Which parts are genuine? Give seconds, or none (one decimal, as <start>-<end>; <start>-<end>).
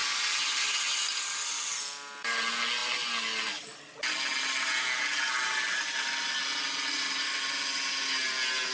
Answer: 0.0-8.7